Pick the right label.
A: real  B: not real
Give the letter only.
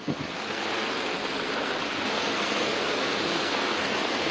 B